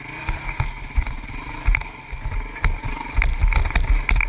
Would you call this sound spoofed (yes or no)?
no